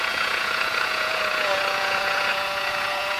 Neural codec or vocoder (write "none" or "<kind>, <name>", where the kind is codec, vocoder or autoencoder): vocoder, Vocos